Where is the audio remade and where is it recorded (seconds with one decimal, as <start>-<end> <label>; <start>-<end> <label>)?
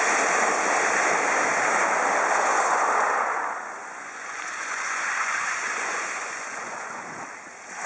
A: 0.0-2.5 recorded; 2.5-7.2 remade; 7.2-7.9 recorded